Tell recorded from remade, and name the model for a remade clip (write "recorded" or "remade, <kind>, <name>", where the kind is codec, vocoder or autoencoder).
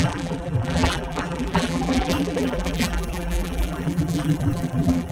remade, vocoder, BigVGAN v2